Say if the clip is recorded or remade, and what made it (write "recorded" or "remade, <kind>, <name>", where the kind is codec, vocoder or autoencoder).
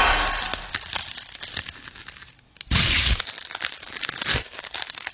recorded